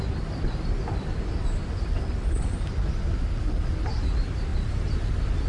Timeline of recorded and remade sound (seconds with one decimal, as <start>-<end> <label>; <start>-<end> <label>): 0.0-5.5 recorded